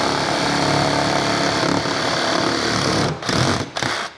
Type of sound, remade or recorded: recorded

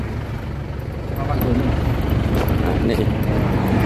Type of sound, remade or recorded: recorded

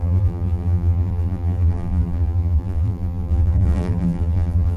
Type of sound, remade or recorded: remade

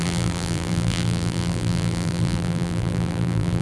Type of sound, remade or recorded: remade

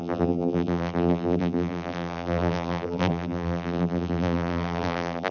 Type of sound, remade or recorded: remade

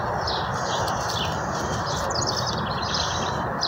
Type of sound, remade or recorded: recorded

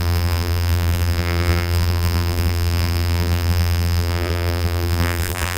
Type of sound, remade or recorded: remade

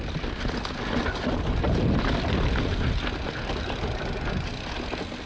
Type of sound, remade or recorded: recorded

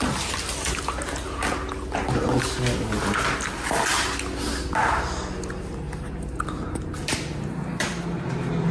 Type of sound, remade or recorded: recorded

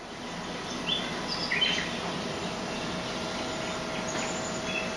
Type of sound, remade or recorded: recorded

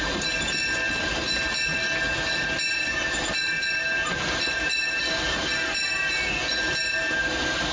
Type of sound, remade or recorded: recorded